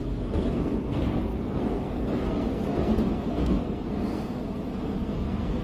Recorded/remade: remade